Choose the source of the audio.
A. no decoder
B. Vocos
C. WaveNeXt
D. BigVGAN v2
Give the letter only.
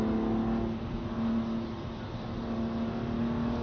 A